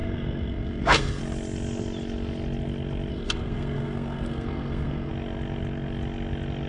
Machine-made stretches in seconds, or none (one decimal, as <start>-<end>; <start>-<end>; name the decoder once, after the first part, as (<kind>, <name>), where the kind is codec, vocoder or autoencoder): 0.0-1.2 (codec, SNAC); 3.1-5.1